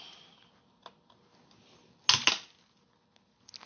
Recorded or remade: recorded